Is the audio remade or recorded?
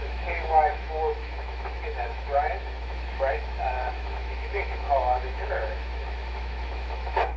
remade